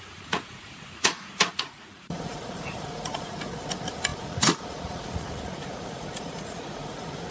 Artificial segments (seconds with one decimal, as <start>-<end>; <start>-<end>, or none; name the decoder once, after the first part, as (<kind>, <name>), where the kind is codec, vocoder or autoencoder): 0.0-7.3 (vocoder, Vocos)